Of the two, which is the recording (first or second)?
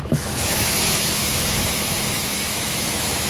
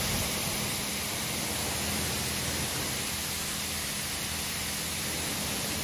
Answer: second